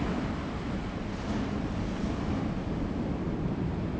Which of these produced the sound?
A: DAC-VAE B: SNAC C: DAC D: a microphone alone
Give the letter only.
D